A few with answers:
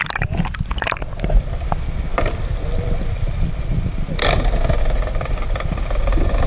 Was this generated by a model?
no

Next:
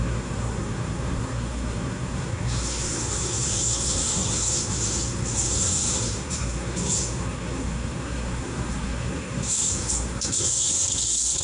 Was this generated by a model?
yes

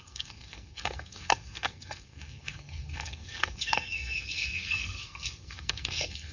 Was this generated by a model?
yes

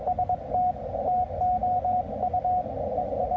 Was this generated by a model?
no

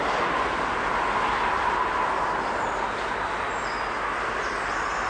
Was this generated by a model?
no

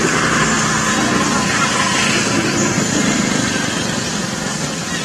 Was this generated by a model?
no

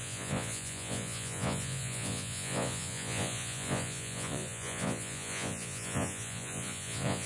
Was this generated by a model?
yes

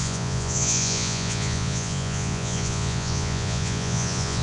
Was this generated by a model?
yes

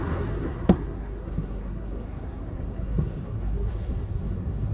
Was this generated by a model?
yes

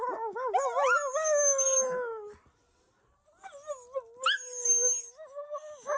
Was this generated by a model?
no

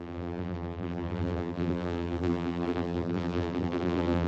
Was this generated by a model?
yes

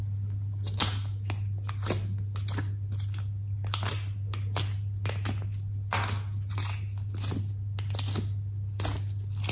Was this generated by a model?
no